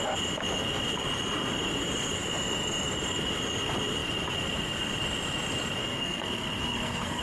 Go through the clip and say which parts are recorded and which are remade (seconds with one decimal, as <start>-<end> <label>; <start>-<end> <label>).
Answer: 0.0-5.8 recorded; 5.8-7.2 remade